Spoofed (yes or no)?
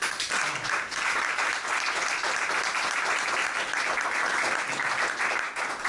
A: no